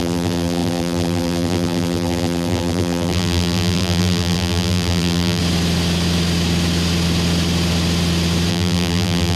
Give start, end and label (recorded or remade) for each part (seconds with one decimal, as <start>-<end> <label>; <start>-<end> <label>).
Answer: 0.0-5.4 remade; 5.4-8.5 recorded; 8.5-9.4 remade